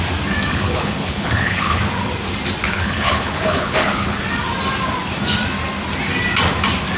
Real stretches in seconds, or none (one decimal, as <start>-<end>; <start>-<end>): 0.0-0.5; 1.8-2.6; 4.2-7.0